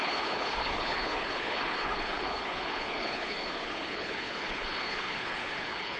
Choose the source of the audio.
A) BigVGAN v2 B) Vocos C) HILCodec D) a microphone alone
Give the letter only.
C